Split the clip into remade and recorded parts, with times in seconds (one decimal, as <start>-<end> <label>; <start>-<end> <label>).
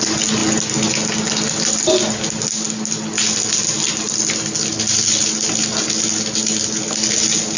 0.0-7.6 recorded